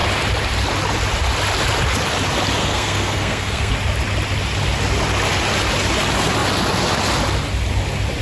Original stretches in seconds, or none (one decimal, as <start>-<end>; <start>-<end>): 0.0-2.6; 3.7-8.2